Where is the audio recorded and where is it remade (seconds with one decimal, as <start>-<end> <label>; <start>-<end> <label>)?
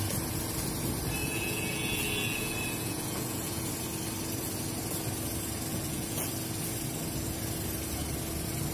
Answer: 0.0-1.2 recorded; 1.2-3.7 remade; 3.7-5.7 recorded; 5.7-6.3 remade; 6.3-8.7 recorded